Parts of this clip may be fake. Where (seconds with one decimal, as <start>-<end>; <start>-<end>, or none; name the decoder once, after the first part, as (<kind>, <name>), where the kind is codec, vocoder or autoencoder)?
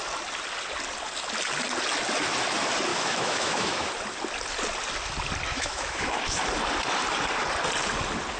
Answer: 2.9-3.9 (autoencoder, DAC-VAE); 5.5-6.4